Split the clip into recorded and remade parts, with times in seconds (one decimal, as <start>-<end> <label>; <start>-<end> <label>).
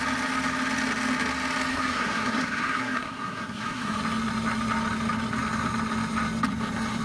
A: 0.0-1.7 recorded; 1.7-4.0 remade; 4.0-7.0 recorded